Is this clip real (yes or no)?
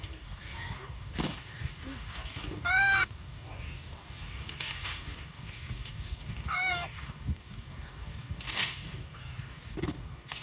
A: no